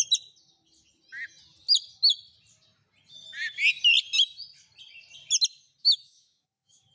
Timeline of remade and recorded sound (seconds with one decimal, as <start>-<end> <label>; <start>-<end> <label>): 0.0-5.8 recorded; 5.8-6.9 remade